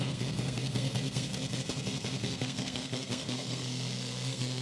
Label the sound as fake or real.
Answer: fake